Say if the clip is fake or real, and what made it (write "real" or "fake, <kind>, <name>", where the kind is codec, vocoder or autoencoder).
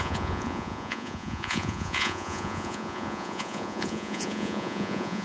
fake, vocoder, Vocos